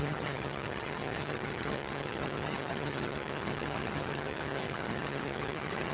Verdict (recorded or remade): remade